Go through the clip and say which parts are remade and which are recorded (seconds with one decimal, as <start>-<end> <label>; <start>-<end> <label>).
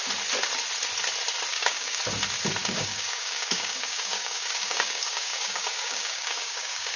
0.0-1.5 recorded; 1.5-2.0 remade; 2.0-2.6 recorded; 2.6-7.0 remade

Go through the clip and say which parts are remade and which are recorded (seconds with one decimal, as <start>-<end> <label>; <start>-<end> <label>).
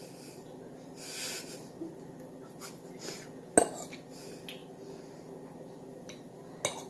0.0-4.6 recorded; 4.6-5.3 remade; 5.3-6.9 recorded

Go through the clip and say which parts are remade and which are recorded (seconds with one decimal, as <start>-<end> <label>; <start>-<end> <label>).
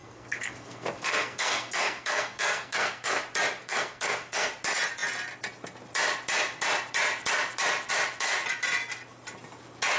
0.0-3.2 remade; 3.2-3.6 recorded; 3.6-4.5 remade; 4.5-10.0 recorded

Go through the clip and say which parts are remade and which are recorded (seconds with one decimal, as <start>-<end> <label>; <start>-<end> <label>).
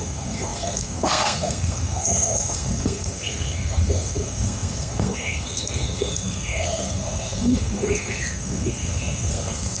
0.0-9.8 remade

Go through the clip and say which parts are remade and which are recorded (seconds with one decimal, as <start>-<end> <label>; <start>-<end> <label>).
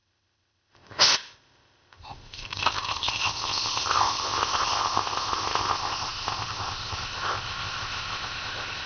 0.0-8.9 remade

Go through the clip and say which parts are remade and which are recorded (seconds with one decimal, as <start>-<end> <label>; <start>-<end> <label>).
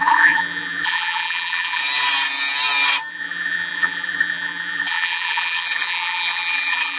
0.0-1.8 remade; 1.8-3.1 recorded; 3.1-7.0 remade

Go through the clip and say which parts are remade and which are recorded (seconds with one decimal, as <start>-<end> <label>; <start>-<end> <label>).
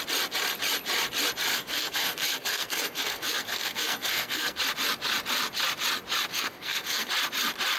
0.0-1.5 recorded; 1.5-4.6 remade; 4.6-6.3 recorded; 6.3-7.1 remade; 7.1-7.8 recorded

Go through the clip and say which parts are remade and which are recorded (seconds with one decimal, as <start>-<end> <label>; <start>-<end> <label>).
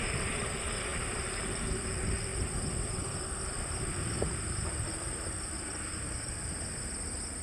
0.0-2.3 remade; 2.3-3.4 recorded; 3.4-7.4 remade